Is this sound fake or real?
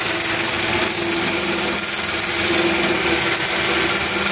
real